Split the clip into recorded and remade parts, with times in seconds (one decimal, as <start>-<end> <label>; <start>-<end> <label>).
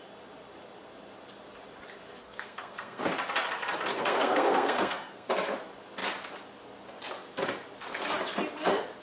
0.0-2.2 recorded; 2.2-3.0 remade; 3.0-3.9 recorded; 3.9-5.3 remade; 5.3-9.0 recorded